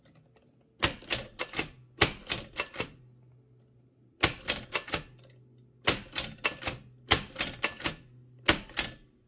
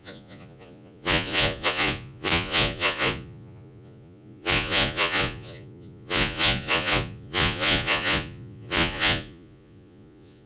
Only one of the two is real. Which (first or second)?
first